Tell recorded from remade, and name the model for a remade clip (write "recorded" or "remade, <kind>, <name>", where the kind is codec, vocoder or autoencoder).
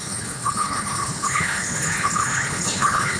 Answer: remade, codec, HILCodec